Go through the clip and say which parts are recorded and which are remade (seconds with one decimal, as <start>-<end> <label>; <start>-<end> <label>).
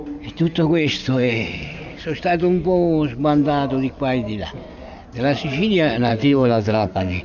0.0-1.0 recorded; 1.0-1.8 remade; 1.8-6.1 recorded; 6.1-7.2 remade